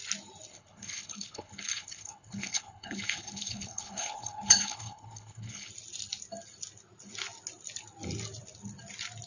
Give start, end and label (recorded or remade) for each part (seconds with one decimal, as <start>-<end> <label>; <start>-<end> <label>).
0.0-0.5 recorded; 0.5-5.7 remade; 5.7-9.3 recorded